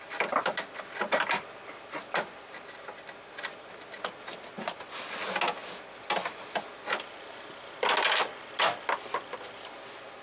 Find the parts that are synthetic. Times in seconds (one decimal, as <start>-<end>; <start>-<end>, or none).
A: none